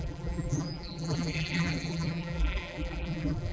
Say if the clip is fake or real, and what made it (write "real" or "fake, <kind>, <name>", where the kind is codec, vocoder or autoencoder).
fake, vocoder, BigVGAN v2